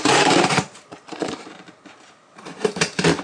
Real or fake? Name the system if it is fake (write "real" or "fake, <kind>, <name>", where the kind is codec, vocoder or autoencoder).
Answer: fake, vocoder, BigVGAN v2